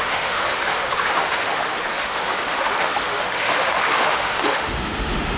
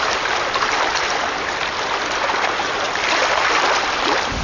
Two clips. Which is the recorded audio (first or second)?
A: second